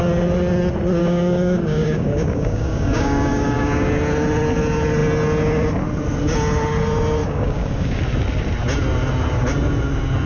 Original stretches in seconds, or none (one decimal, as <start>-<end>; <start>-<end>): 0.0-1.0; 3.9-7.2; 8.0-10.3